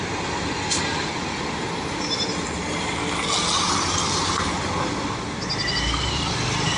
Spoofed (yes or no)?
no